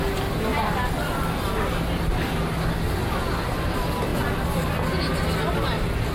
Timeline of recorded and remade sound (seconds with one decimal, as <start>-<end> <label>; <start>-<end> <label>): 0.0-6.1 recorded